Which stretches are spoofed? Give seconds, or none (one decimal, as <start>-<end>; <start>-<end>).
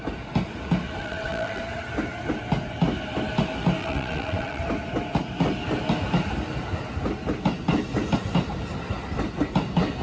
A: 1.0-1.6; 3.8-4.6